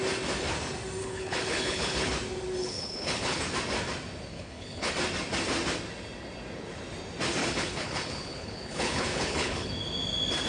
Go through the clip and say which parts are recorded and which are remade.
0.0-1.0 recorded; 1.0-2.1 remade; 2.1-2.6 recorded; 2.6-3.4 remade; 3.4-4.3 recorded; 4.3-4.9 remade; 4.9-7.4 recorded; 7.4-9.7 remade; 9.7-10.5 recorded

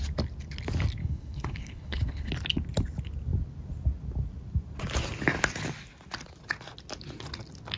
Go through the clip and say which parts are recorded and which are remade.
0.0-1.0 recorded; 1.0-2.3 remade; 2.3-7.8 recorded

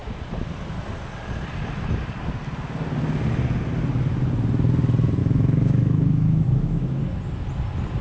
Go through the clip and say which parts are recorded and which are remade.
0.0-5.2 recorded; 5.2-7.0 remade; 7.0-8.0 recorded

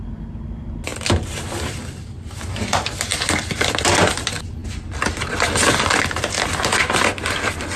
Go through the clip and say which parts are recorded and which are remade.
0.0-7.8 recorded